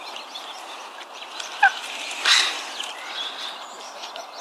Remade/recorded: remade